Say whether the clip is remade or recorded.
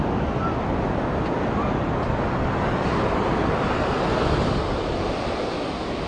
recorded